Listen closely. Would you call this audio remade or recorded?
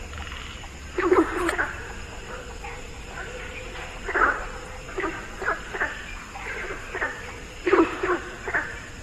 remade